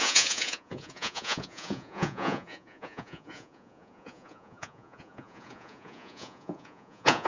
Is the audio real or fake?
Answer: fake